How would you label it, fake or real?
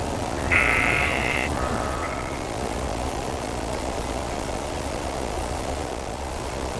fake